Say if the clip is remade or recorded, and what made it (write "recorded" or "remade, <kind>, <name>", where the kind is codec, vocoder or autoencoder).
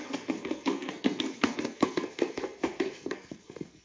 remade, codec, SNAC